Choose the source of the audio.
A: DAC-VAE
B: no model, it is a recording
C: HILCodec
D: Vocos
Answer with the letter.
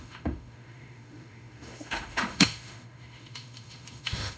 A